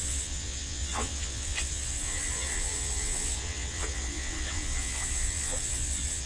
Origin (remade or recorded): remade